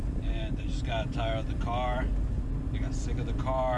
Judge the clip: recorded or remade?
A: recorded